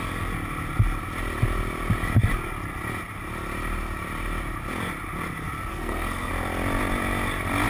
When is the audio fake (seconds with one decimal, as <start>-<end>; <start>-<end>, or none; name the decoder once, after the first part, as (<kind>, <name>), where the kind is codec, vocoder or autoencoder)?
5.7-6.3 (codec, SNAC)